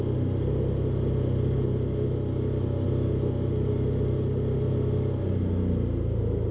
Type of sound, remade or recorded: recorded